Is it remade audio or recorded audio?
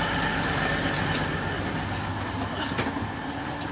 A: recorded